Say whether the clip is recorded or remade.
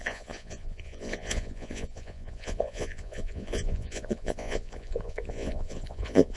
remade